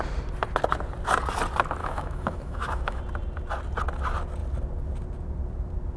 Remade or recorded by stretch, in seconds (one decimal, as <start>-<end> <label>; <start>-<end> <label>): 0.0-1.8 recorded; 1.8-3.0 remade; 3.0-6.0 recorded